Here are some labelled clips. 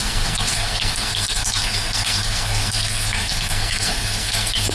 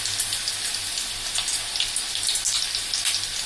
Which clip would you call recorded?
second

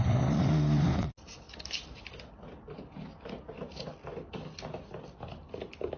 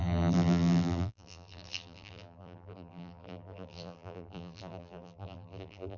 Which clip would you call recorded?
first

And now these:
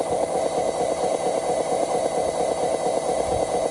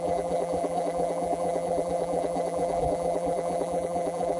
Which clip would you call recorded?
first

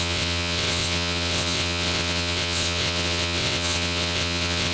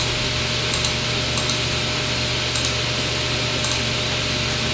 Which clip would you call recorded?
second